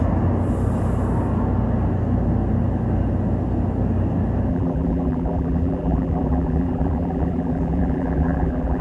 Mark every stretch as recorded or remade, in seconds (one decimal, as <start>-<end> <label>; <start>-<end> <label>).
0.0-4.5 recorded; 4.5-8.8 remade